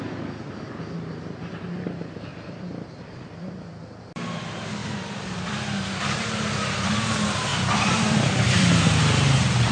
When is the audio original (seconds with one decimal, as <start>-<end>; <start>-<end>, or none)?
0.0-2.3; 4.0-4.8; 5.5-7.5; 8.7-9.7